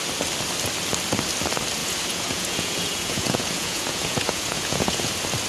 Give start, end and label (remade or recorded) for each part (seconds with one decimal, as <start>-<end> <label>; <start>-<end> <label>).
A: 0.0-1.8 recorded; 1.8-5.1 remade; 5.1-5.5 recorded